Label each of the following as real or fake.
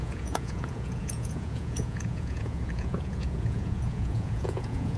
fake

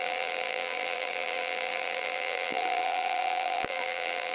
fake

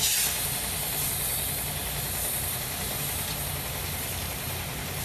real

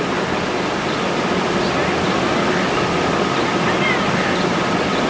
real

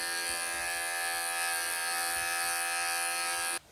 real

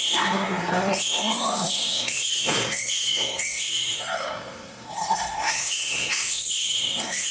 fake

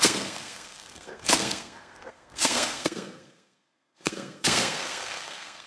fake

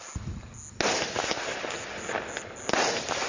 real